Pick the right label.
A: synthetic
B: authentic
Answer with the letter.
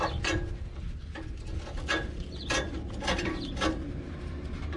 B